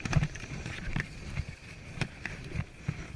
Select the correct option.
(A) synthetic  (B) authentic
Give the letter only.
A